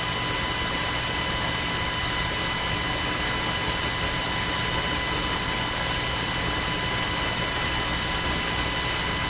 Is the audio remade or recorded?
recorded